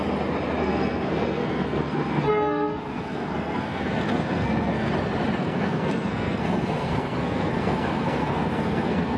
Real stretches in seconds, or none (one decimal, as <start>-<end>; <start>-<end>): 0.0-0.6; 4.9-5.4